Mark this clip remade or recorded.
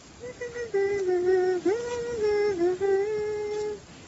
recorded